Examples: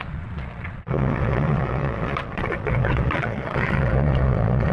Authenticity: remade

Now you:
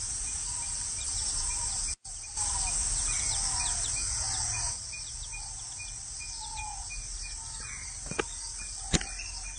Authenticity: recorded